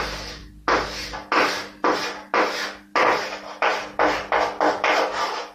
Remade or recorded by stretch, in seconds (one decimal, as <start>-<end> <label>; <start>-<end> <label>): 0.0-0.4 remade; 0.4-3.0 recorded; 3.0-3.7 remade; 3.7-4.7 recorded; 4.7-5.5 remade